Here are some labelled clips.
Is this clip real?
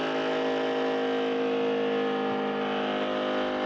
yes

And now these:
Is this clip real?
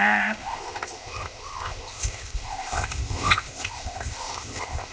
no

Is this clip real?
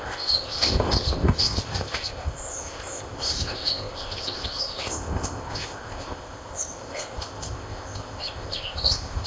no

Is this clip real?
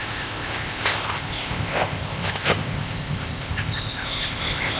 no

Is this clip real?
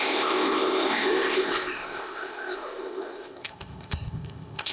no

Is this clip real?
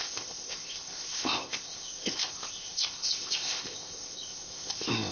no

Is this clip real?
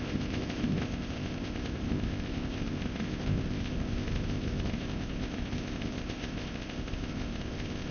no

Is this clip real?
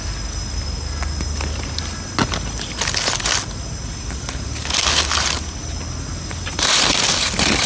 yes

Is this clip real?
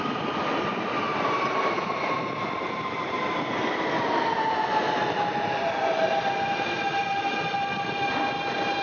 yes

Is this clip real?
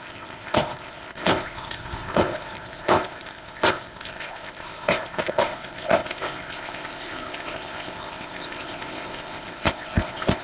no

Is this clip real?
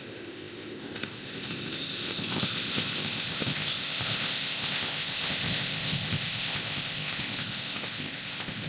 no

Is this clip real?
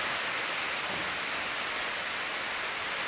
yes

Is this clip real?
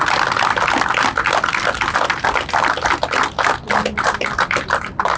yes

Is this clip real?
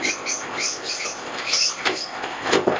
no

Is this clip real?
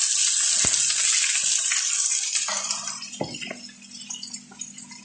yes